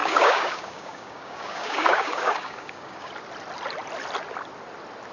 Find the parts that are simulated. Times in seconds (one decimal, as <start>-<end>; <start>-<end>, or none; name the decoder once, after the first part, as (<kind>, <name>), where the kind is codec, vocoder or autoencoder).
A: 0.0-3.1 (codec, DAC)